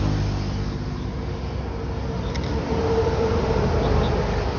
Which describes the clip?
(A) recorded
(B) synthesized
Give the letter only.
A